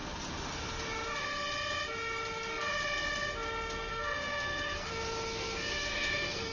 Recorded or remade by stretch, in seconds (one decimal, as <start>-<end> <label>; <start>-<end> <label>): 0.0-3.9 recorded; 3.9-4.9 remade; 4.9-5.7 recorded; 5.7-6.5 remade